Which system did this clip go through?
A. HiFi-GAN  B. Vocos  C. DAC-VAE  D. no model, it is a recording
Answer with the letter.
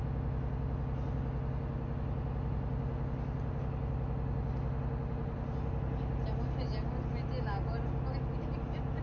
D